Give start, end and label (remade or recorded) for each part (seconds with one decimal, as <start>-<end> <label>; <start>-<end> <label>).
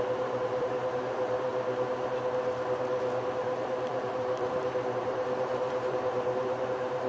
0.0-1.5 remade; 1.5-2.9 recorded; 2.9-7.1 remade